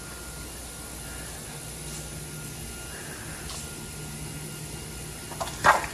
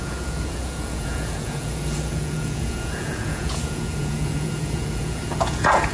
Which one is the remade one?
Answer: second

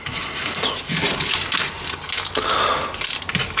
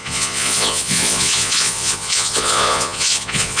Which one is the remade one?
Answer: second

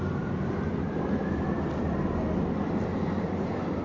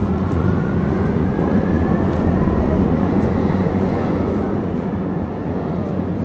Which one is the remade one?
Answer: second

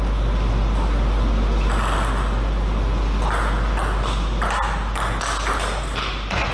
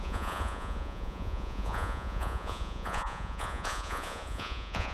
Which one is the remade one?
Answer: second